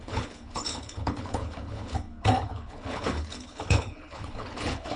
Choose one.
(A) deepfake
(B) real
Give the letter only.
A